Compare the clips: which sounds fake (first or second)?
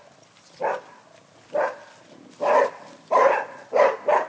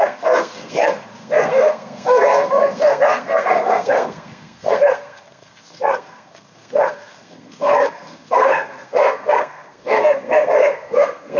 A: second